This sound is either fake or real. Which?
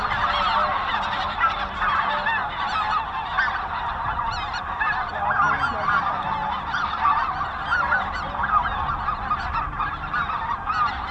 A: real